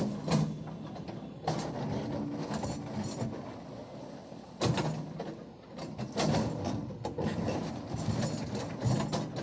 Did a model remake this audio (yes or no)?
no